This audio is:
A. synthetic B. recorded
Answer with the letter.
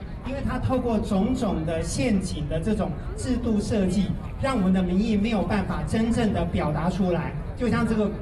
B